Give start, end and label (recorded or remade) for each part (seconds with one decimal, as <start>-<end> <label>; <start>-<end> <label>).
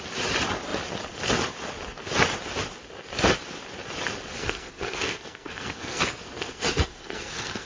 0.0-4.4 recorded; 4.4-7.7 remade